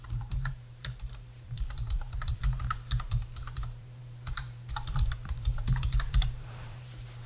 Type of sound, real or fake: fake